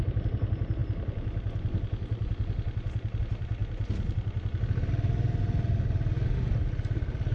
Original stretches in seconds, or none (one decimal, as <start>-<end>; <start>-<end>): 0.0-7.3